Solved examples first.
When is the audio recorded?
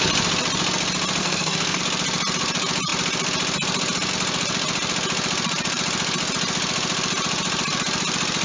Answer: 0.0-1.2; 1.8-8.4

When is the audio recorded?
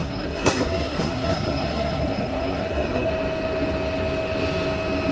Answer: 3.1-5.1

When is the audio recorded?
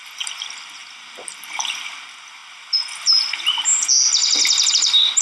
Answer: 0.0-5.2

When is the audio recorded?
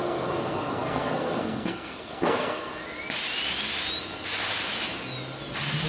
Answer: 2.7-5.9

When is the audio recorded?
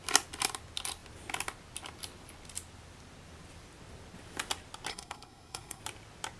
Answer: 0.0-4.9; 5.8-6.4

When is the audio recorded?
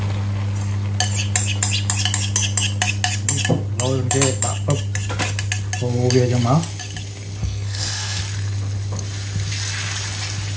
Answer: 0.0-7.4; 8.2-10.6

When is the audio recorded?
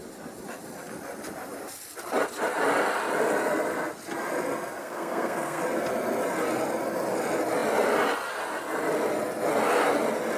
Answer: 0.0-4.8; 5.6-10.4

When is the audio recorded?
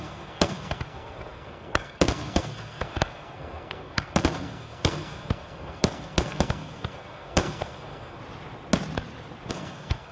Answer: 8.2-9.5